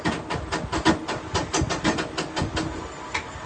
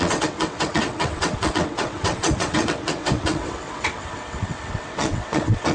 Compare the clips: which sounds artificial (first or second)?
second